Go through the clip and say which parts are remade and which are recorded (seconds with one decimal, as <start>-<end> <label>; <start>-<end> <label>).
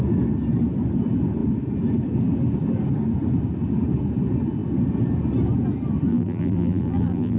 0.0-6.1 recorded; 6.1-7.4 remade